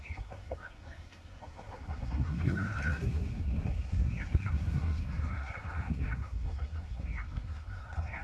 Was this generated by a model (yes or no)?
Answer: yes